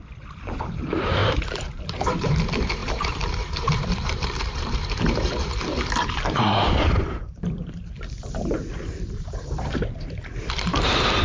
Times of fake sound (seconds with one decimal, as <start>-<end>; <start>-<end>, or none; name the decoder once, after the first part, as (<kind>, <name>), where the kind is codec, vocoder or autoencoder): 0.0-11.2 (vocoder, BigVGAN v2)